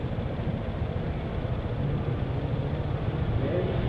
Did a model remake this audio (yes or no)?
no